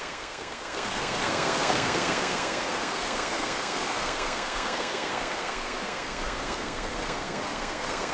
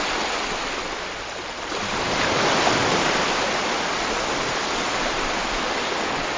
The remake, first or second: first